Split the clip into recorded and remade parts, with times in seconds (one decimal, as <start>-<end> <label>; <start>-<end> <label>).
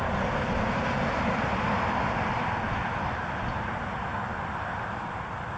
0.0-5.6 recorded